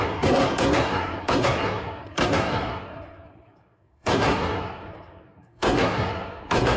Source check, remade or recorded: remade